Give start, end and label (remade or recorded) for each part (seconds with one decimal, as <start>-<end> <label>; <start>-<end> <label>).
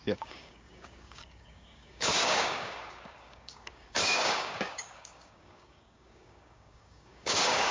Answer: 0.0-7.7 remade